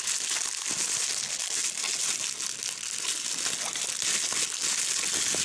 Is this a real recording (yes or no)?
yes